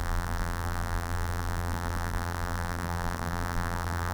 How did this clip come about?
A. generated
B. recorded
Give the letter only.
A